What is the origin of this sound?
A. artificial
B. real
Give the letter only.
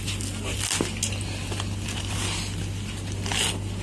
B